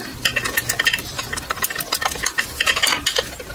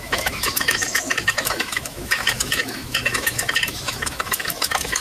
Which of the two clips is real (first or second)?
first